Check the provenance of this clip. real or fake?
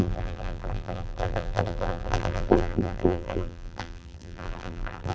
fake